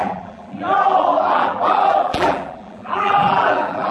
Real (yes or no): no